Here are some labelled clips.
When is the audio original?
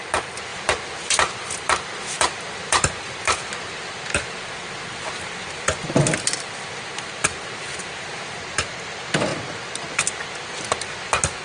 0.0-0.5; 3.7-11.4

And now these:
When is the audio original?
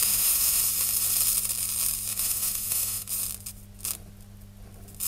0.6-2.1; 3.1-5.1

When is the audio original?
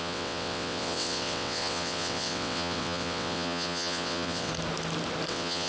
4.5-5.3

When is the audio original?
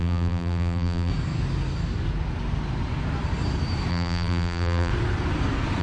1.1-3.9; 4.9-5.8